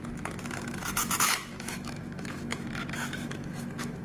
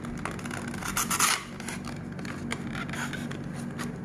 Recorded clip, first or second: second